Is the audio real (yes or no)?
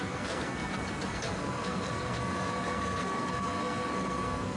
no